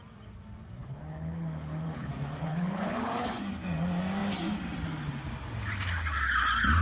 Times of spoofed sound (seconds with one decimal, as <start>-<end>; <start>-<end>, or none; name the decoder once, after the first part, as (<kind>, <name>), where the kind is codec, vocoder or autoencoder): 0.8-2.1 (codec, HILCodec); 2.5-3.4